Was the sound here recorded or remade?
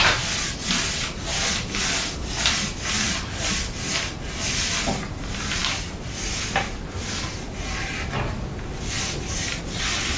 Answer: recorded